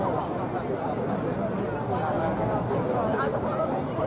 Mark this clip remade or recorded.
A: recorded